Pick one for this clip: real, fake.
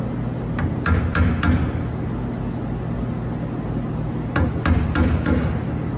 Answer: real